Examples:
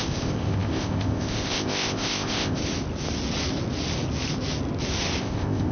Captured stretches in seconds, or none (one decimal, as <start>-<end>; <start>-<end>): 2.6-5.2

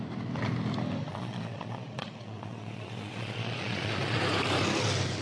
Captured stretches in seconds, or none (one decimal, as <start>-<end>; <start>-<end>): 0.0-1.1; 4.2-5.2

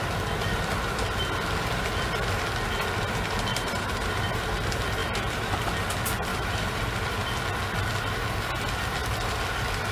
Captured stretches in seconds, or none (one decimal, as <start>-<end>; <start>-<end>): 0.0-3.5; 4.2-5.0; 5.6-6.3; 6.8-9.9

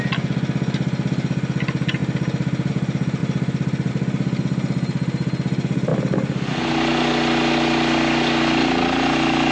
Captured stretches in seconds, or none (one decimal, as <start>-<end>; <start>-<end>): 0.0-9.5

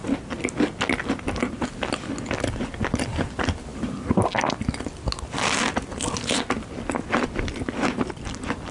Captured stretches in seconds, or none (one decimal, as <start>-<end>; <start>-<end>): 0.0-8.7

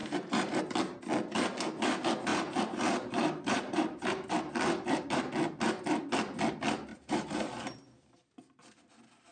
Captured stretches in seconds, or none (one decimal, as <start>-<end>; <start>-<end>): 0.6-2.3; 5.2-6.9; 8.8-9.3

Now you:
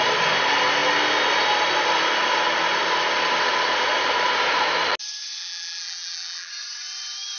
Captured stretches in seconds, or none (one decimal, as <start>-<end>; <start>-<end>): 0.0-5.4; 6.5-7.4

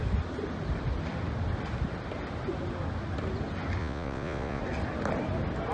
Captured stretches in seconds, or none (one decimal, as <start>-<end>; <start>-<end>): 0.0-3.8; 4.6-5.7